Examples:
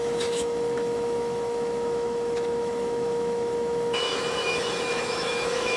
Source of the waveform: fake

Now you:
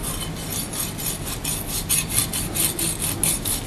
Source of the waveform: real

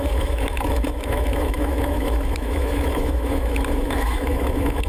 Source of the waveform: fake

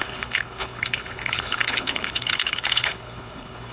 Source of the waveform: fake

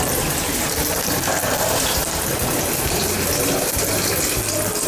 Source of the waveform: fake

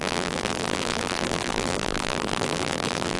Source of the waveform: fake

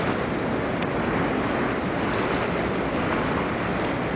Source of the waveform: real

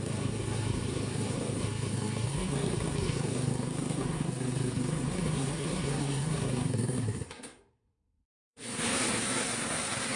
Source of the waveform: fake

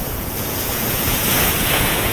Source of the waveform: fake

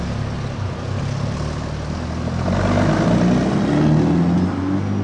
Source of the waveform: real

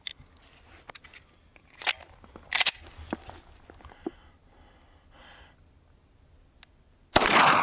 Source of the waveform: real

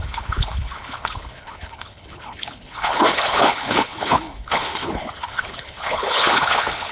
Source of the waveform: fake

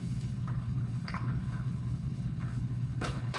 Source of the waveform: fake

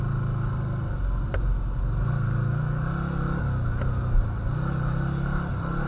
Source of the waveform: real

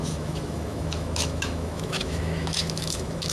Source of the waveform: fake